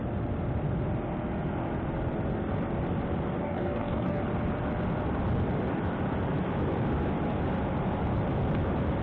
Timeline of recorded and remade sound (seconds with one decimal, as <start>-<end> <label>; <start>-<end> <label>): 0.0-3.4 recorded; 3.4-4.2 remade; 4.2-9.0 recorded